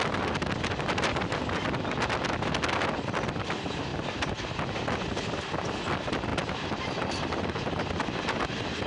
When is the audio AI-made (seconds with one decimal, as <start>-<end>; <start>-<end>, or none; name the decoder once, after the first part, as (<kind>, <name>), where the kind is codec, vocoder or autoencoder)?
none